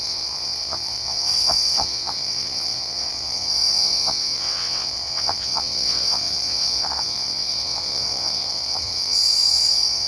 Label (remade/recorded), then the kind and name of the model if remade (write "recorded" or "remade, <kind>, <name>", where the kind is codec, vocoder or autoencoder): remade, vocoder, WaveNeXt